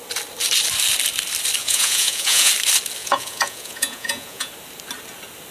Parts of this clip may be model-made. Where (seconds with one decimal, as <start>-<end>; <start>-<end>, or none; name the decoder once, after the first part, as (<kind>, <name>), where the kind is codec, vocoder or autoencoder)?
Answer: 1.6-2.5 (vocoder, Vocos); 3.0-4.5